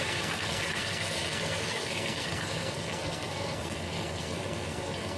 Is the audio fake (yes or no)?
yes